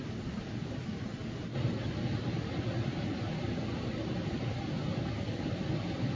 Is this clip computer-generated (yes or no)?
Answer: no